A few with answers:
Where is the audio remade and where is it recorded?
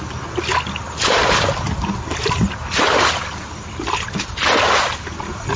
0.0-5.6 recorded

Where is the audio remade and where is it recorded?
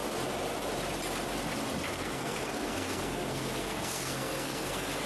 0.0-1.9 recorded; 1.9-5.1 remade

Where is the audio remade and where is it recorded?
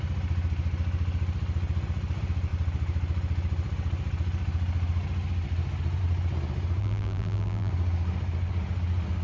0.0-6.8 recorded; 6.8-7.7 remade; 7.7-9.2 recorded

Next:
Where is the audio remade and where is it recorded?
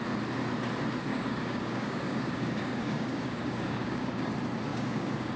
0.0-1.1 recorded; 1.1-4.3 remade; 4.3-4.7 recorded; 4.7-5.4 remade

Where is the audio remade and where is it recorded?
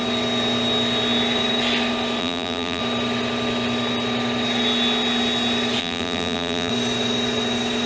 0.0-2.2 recorded; 2.2-2.8 remade; 2.8-5.8 recorded; 5.8-6.7 remade; 6.7-7.9 recorded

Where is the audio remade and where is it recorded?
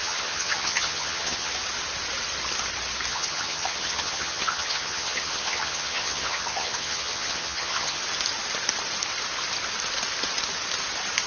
0.0-1.5 remade; 1.5-3.1 recorded; 3.1-8.0 remade; 8.0-11.3 recorded